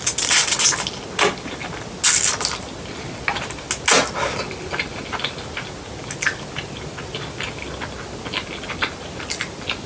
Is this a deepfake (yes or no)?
no